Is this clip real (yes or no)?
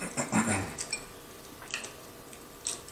no